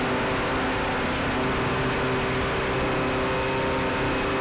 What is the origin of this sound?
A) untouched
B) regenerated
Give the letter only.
A